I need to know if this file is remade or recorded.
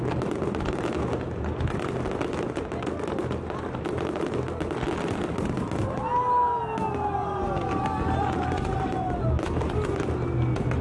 recorded